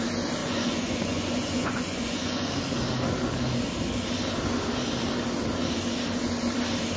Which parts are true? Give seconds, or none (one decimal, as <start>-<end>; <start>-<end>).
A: 0.0-0.4; 2.5-7.0